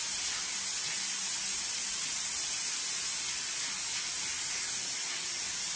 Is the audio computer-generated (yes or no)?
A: no